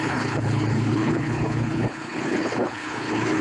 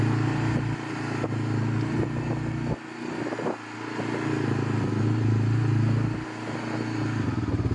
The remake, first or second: first